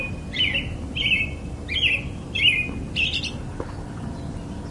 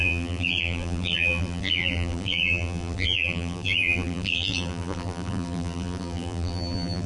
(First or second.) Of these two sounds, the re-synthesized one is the second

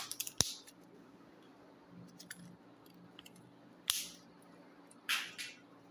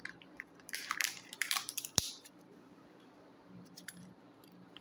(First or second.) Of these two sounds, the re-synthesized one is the second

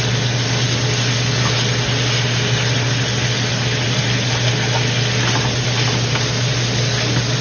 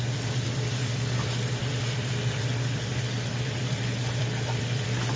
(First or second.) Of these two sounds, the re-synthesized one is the second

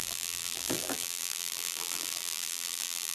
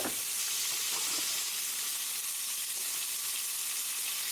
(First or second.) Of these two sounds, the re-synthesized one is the first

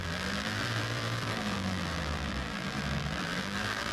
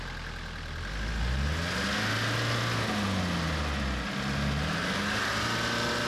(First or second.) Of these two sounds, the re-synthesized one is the first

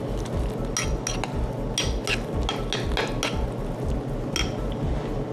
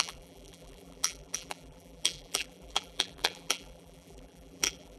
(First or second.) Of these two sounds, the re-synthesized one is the second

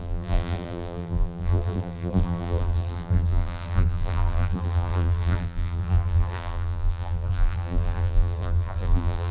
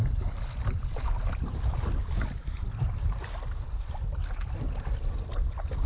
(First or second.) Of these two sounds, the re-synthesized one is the first